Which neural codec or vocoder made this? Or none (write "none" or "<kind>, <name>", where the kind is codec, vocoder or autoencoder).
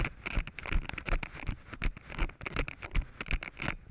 none